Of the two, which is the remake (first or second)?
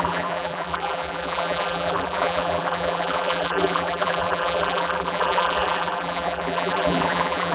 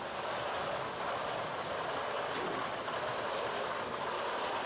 first